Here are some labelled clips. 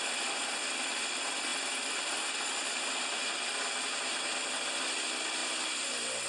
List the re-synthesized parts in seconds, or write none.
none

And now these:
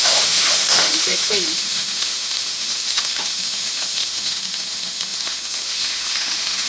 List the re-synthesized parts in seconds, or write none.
0.0-6.7 (autoencoder, DAC-VAE)

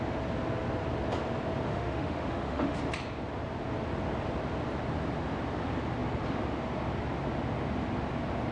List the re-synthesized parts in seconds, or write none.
1.7-2.8 (autoencoder, DAC-VAE)